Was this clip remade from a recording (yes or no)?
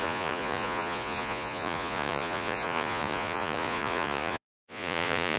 yes